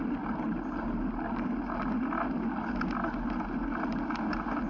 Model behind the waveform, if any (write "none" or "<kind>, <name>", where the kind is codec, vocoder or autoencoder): none